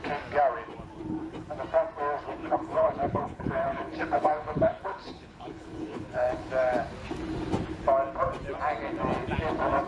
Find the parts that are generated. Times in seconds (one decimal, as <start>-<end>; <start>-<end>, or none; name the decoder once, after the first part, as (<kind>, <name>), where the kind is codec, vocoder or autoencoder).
2.4-6.5 (codec, HILCodec)